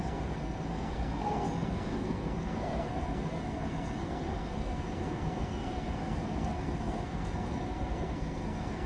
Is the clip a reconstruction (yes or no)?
yes